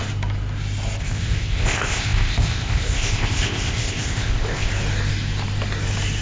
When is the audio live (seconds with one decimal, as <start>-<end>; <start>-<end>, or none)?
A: 0.0-1.0; 4.7-6.2